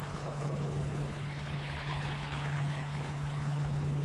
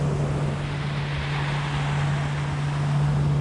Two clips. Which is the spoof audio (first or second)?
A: first